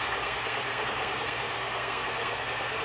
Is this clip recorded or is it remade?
remade